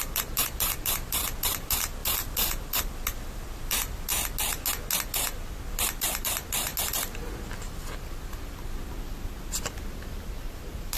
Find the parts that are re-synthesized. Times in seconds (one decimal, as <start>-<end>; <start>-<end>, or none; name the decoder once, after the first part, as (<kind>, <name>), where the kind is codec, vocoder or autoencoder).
0.0-4.1 (vocoder, BigVGAN v2); 5.7-6.7; 8.8-11.0